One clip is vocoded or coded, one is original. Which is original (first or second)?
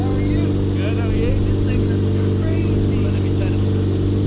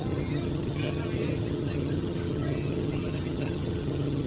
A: first